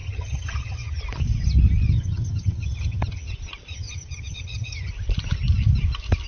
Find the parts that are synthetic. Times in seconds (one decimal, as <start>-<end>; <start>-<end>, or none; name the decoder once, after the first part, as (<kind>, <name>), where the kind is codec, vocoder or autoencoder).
0.0-1.0 (vocoder, HiFi-GAN); 1.9-3.3; 3.7-4.9